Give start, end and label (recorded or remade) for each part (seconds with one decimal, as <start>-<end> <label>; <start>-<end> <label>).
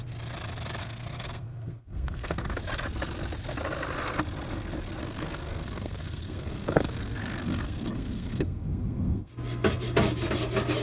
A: 0.0-0.8 recorded; 0.8-2.5 remade; 2.5-5.0 recorded; 5.0-9.3 remade; 9.3-10.8 recorded